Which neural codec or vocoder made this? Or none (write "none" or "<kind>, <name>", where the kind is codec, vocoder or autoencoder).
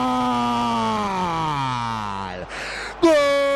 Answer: none